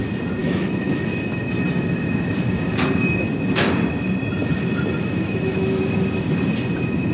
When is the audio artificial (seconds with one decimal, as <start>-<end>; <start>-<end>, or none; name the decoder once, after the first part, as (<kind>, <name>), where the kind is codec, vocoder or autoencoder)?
0.4-1.4 (autoencoder, DAC-VAE); 4.4-5.8